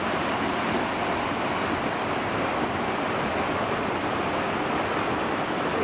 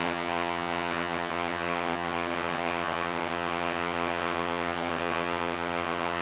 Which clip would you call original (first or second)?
first